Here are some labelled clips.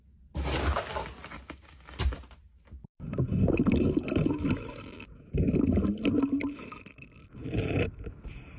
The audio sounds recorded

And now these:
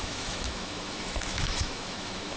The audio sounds remade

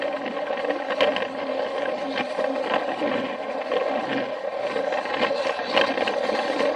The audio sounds recorded